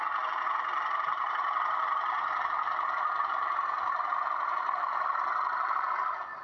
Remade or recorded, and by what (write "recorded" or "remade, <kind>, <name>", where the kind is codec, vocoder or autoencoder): recorded